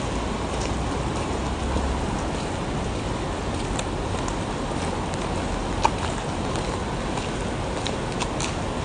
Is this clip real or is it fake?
real